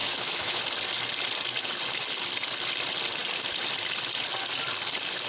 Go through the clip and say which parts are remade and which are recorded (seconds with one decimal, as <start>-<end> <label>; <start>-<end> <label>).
0.0-0.6 remade; 0.6-5.3 recorded